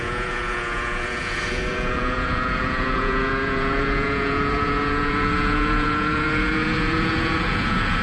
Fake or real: fake